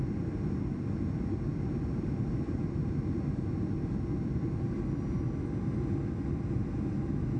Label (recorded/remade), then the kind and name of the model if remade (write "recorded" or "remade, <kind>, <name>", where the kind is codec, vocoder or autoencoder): recorded